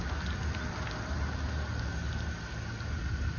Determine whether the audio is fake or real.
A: real